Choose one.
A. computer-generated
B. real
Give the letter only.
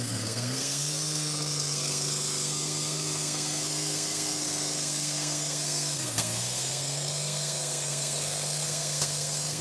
A